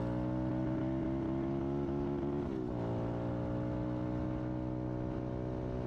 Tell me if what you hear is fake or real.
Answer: real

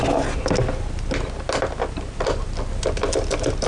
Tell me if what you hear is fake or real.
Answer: real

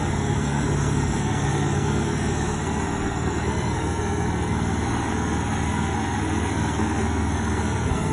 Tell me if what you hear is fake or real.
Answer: fake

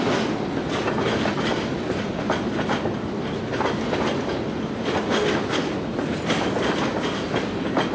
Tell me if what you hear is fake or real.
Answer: real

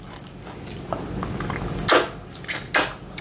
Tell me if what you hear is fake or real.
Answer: real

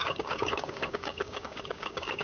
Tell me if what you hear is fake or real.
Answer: fake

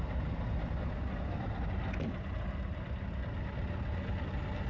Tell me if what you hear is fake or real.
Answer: real